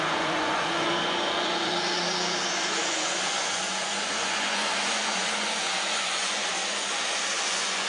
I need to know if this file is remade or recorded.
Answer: remade